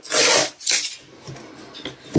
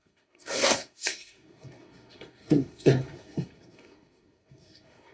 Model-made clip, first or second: second